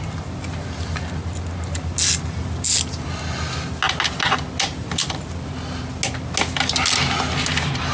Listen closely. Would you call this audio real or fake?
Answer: real